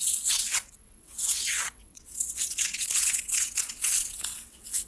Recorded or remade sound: remade